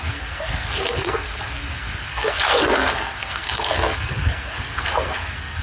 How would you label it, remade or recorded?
remade